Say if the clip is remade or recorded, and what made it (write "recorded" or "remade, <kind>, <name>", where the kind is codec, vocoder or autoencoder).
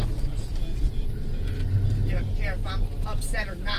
recorded